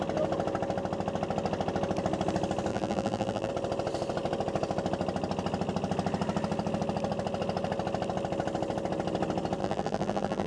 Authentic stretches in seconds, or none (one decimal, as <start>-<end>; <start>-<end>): 0.0-2.7; 3.5-9.6